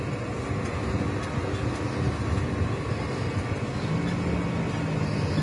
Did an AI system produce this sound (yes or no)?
no